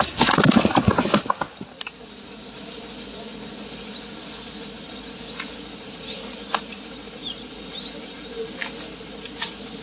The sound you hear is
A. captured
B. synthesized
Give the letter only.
A